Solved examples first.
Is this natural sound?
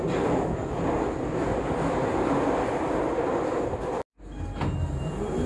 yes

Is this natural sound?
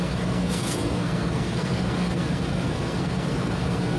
no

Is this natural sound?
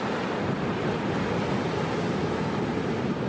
yes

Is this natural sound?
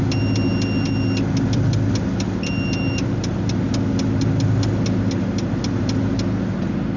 yes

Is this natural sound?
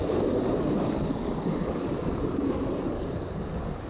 no